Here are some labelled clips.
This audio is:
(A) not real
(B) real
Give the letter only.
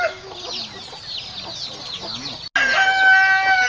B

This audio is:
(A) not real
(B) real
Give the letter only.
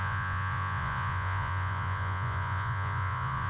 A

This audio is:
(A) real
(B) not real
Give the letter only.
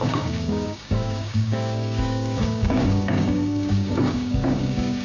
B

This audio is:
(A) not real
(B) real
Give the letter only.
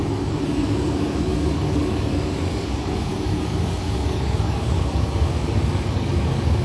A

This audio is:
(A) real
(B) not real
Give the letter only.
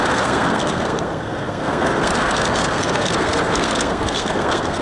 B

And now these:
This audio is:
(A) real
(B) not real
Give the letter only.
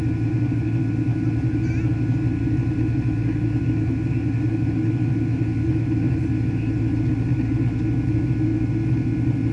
A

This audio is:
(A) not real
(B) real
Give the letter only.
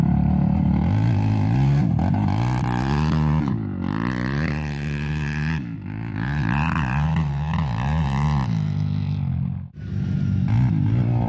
B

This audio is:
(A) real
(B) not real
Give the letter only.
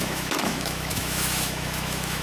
B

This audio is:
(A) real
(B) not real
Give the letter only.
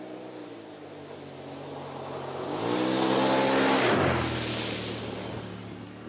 A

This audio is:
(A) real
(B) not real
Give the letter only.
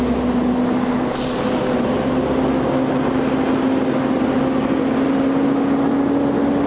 A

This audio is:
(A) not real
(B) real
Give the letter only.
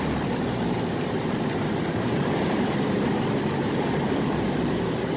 B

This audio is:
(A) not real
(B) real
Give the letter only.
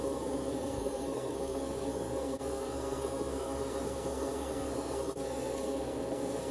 A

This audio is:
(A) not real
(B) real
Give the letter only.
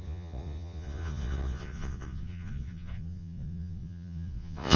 A